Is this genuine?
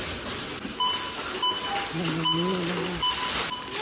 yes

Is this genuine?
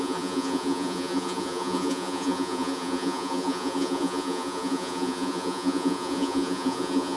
no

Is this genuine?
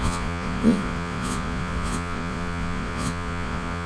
no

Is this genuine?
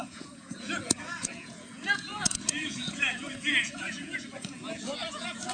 no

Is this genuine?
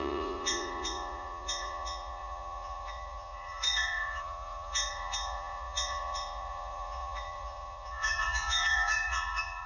no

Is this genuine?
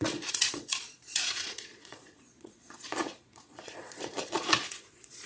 no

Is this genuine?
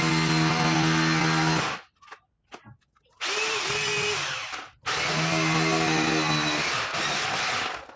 yes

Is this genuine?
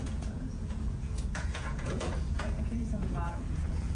no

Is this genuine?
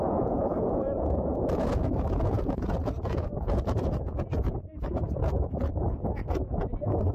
no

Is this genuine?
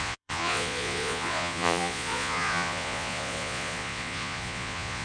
no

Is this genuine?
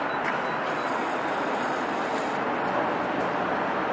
yes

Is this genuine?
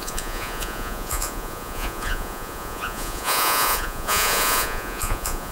no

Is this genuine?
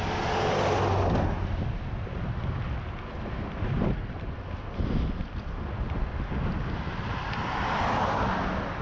yes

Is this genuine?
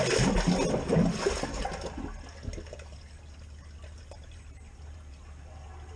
yes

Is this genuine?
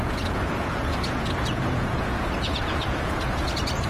no